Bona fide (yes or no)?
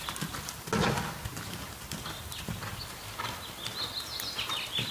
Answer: yes